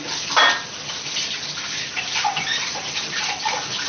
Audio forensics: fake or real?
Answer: real